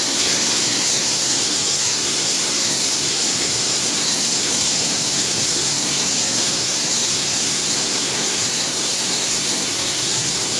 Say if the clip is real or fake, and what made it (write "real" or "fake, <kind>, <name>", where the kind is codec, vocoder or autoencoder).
fake, codec, SNAC